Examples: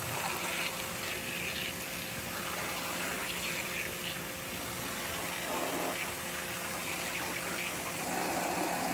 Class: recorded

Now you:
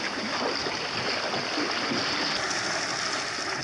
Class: recorded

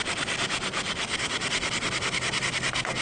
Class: recorded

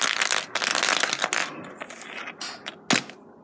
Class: recorded